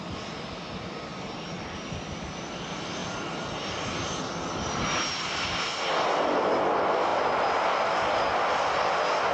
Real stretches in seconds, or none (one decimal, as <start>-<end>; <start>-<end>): 0.0-1.1; 1.9-9.3